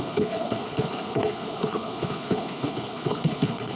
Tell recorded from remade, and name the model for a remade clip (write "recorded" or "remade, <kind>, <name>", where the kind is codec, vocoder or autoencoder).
remade, codec, HILCodec